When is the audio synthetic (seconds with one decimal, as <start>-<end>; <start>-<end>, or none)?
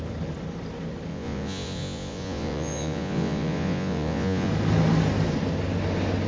1.1-4.5